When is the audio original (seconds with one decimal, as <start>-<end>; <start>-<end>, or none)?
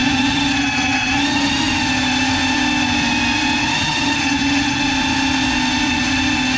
1.5-3.6; 4.8-6.6